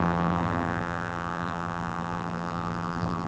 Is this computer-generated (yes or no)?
yes